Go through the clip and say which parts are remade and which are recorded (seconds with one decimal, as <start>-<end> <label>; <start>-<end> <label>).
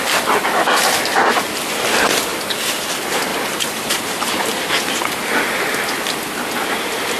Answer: 0.0-2.3 recorded; 2.3-2.8 remade; 2.8-3.3 recorded; 3.3-4.3 remade; 4.3-7.2 recorded